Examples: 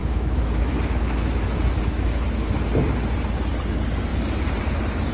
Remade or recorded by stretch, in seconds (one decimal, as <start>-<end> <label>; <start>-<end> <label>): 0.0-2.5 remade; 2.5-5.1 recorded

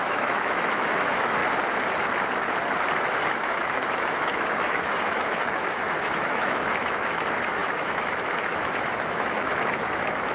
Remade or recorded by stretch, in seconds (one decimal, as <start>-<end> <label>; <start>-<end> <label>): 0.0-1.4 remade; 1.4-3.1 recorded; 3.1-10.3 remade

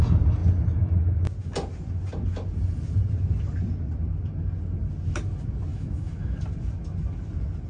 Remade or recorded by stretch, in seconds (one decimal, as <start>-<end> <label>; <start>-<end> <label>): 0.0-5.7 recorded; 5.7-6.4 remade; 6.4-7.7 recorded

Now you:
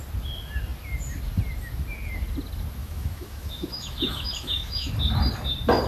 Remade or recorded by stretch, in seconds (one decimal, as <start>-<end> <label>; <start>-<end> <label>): 0.0-2.8 recorded; 2.8-4.9 remade; 4.9-5.9 recorded

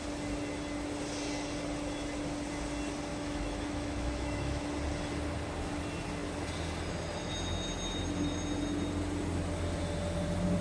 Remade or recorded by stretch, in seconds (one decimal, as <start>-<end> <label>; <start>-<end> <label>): 0.0-3.1 recorded; 3.1-4.6 remade; 4.6-10.6 recorded

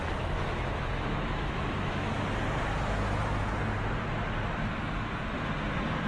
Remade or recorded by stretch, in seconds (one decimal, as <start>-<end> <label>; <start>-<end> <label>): 0.0-2.1 remade; 2.1-6.1 recorded

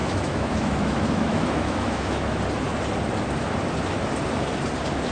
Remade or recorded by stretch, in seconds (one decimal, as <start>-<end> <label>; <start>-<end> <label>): 0.0-2.4 remade; 2.4-5.1 recorded